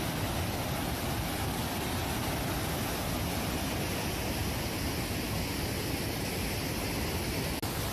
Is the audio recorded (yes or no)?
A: yes